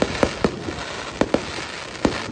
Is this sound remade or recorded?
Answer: recorded